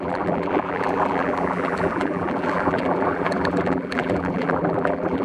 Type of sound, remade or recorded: remade